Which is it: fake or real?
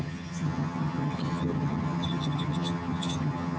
fake